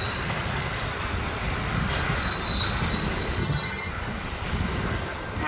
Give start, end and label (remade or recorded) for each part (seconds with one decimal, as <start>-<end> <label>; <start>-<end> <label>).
0.0-3.4 recorded; 3.4-3.9 remade; 3.9-5.5 recorded